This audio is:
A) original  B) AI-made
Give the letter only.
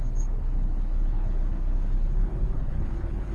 B